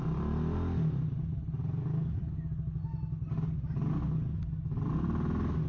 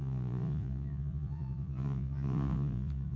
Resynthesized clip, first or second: second